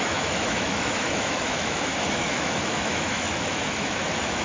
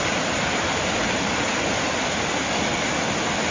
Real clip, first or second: second